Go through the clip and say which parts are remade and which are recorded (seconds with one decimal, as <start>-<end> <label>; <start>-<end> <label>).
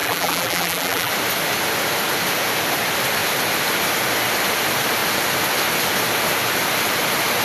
0.0-1.1 remade; 1.1-7.4 recorded